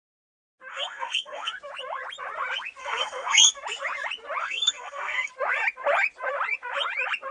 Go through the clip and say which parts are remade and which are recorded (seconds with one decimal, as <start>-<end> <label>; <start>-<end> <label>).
0.0-0.7 recorded; 0.7-1.5 remade; 1.5-2.8 recorded; 2.8-3.5 remade; 3.5-4.4 recorded; 4.4-5.3 remade; 5.3-7.3 recorded

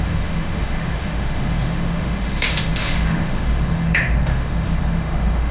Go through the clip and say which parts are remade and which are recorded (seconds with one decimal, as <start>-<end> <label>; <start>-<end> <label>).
0.0-5.5 remade